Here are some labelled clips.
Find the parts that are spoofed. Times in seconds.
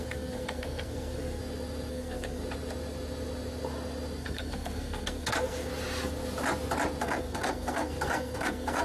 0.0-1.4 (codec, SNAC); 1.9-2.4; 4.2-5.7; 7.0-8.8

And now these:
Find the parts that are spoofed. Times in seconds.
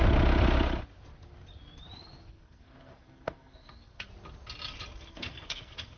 2.3-4.1 (codec, SNAC); 5.1-6.0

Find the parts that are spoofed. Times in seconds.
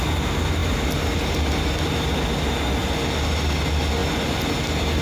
none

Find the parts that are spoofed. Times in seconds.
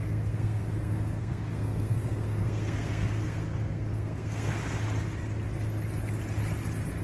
0.0-4.6 (codec, SNAC)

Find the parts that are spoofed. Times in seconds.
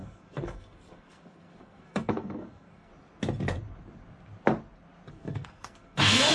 0.0-2.9 (codec, SNAC); 5.1-6.3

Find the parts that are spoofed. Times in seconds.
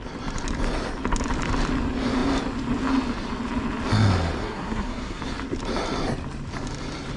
4.4-5.2 (codec, SNAC)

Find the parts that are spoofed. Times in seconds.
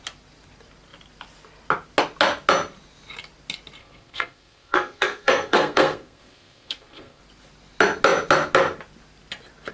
3.8-7.2 (codec, SNAC)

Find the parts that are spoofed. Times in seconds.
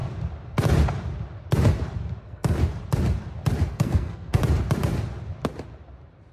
2.2-2.6 (codec, SNAC); 3.7-4.4